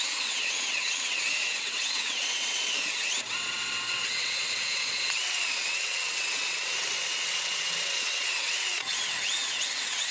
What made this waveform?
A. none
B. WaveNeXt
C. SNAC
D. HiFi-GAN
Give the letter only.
B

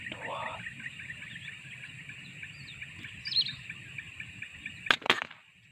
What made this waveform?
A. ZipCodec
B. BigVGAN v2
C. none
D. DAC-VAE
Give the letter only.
C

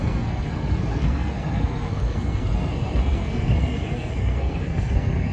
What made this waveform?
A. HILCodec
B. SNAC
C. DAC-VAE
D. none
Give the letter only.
B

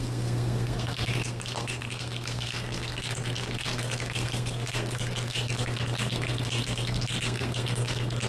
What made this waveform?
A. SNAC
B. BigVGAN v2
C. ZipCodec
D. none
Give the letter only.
A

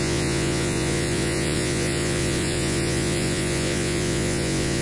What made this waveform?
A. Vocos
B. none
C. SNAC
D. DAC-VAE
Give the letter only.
A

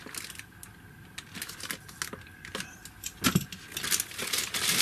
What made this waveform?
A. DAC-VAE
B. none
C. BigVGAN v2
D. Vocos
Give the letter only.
B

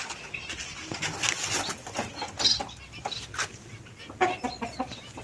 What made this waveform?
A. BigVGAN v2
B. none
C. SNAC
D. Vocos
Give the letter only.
B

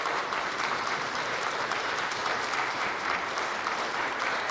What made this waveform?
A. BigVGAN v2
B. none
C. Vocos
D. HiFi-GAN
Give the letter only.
A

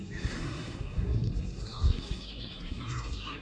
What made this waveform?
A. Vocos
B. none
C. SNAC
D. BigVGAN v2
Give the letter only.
C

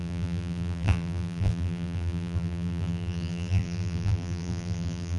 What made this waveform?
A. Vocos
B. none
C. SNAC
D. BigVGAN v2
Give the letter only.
D